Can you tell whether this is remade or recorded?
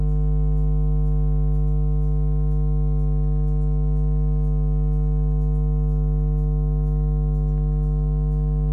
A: recorded